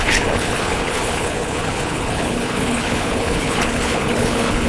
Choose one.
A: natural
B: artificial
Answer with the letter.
B